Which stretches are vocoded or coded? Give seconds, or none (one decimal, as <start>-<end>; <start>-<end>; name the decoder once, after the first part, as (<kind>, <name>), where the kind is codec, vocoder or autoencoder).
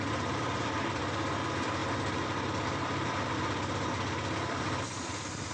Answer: 0.0-1.8 (vocoder, BigVGAN v2); 5.1-5.5